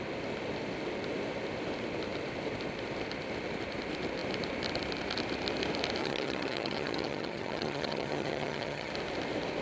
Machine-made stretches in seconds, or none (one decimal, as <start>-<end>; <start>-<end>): 6.0-8.9